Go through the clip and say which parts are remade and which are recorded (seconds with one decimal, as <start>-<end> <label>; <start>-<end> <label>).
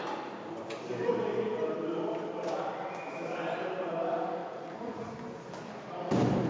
0.0-4.4 recorded; 4.4-5.1 remade; 5.1-6.5 recorded